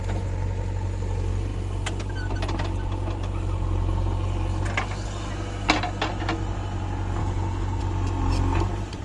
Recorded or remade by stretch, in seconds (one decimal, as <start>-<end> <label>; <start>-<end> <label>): 0.0-7.2 recorded; 7.2-7.8 remade; 7.8-9.0 recorded